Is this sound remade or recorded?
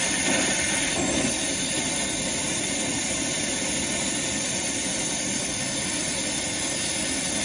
recorded